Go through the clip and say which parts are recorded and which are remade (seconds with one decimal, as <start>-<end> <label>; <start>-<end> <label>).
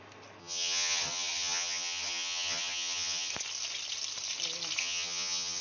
0.0-0.4 recorded; 0.4-3.3 remade; 3.3-4.8 recorded; 4.8-5.6 remade